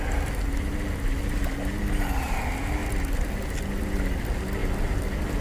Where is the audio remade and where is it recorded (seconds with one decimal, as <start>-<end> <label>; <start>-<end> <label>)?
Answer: 0.0-5.4 recorded